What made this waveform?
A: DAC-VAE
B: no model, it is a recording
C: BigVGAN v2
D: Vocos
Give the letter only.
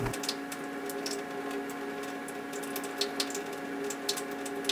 B